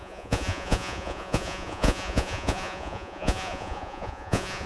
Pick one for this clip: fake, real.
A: fake